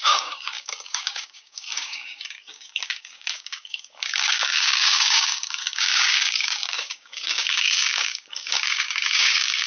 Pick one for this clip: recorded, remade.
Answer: remade